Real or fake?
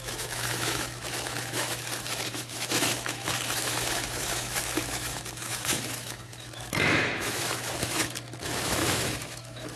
fake